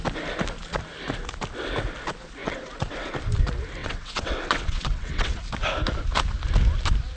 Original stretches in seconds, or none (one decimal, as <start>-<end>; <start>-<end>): 0.0-2.4; 3.1-3.8; 5.4-7.2